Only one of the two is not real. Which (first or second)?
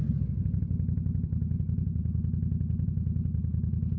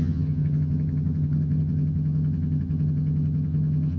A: second